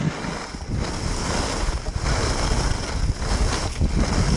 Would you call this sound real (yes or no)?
yes